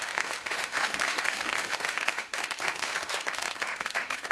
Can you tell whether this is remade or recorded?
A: remade